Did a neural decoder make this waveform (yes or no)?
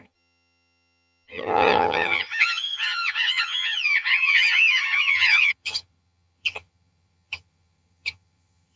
yes